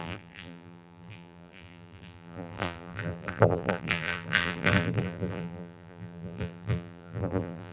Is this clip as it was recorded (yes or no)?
no